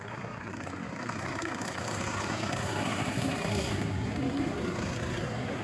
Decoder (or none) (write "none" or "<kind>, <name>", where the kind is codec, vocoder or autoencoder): codec, SNAC